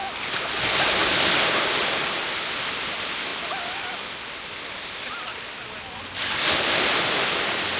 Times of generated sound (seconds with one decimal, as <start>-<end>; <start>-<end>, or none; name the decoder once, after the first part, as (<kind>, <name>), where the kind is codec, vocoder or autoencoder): none